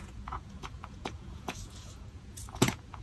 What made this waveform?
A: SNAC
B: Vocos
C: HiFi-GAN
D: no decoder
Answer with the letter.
B